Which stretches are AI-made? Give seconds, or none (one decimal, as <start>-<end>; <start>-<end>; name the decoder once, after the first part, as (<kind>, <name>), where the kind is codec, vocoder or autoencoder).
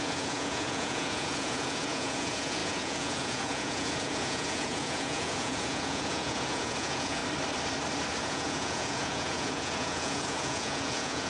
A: 0.0-7.2 (vocoder, Vocos); 8.2-11.3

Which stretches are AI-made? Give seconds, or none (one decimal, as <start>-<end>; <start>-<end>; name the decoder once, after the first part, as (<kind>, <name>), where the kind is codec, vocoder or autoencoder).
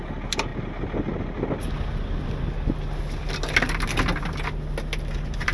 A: none